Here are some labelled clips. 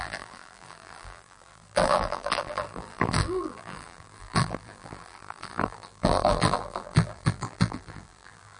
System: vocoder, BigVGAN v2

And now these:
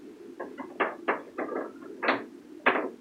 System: none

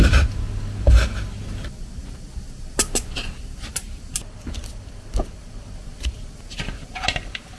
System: none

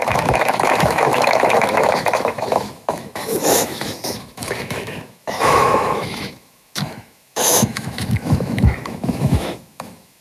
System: autoencoder, DAC-VAE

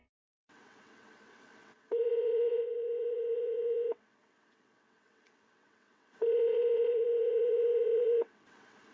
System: vocoder, WaveNeXt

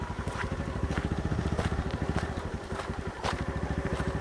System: vocoder, BigVGAN v2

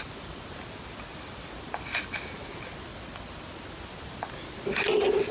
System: none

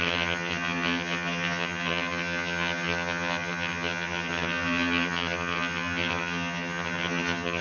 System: vocoder, HiFi-GAN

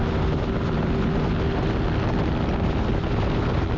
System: none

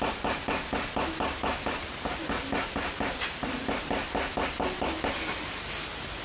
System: none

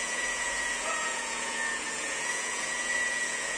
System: vocoder, Vocos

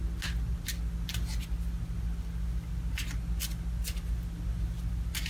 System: none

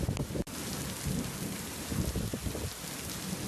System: none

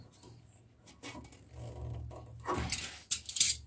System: none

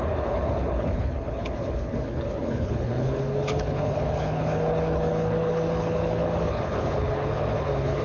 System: codec, HILCodec